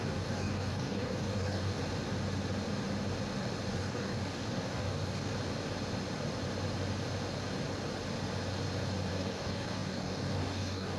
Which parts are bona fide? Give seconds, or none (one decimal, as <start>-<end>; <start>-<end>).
1.8-3.7; 5.3-9.1